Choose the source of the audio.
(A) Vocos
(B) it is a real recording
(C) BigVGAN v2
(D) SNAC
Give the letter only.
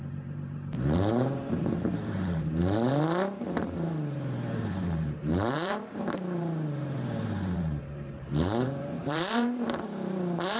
C